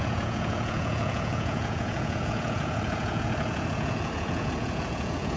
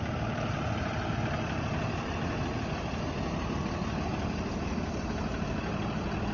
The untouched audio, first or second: second